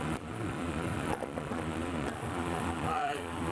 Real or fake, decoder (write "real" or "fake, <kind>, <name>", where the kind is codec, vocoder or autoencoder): fake, vocoder, Vocos